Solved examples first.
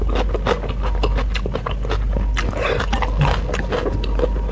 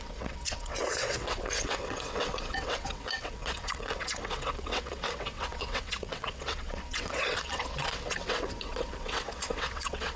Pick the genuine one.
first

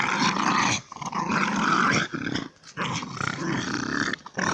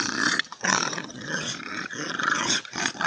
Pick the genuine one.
first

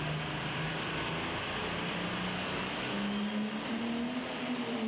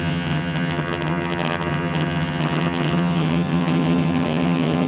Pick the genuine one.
first